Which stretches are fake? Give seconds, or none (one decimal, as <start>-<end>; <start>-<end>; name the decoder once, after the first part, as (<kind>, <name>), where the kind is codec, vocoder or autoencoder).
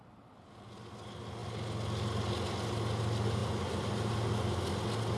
none